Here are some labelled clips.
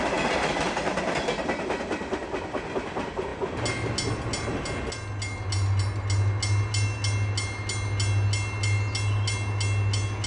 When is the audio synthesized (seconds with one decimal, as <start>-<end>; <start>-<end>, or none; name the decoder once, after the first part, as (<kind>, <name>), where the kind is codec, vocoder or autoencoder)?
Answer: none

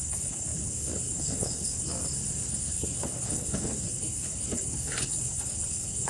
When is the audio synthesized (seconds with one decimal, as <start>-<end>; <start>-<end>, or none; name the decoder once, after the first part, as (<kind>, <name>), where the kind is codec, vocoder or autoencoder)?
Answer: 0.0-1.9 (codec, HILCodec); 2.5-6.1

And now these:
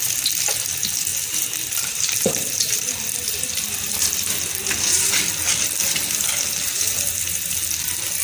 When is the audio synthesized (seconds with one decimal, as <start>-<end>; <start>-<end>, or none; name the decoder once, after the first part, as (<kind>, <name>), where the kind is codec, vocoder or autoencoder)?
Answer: 1.1-3.0 (vocoder, BigVGAN v2)

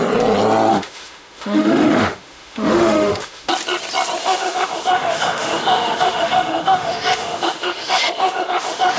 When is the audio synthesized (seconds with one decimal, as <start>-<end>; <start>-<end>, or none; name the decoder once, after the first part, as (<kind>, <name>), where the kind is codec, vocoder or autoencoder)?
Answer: 0.7-3.5 (autoencoder, DAC-VAE); 4.2-9.0